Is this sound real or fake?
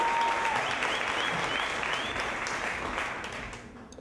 real